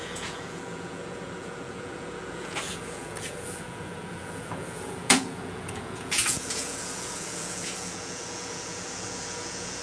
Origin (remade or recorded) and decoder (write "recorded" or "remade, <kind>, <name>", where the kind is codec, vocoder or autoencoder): remade, vocoder, Vocos